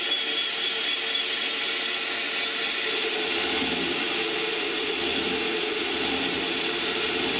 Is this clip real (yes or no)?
yes